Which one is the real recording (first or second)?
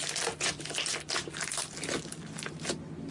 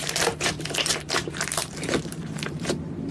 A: first